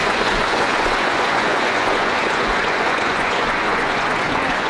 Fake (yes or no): yes